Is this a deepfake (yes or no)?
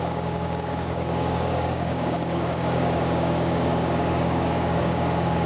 yes